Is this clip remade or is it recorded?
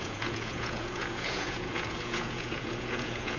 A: remade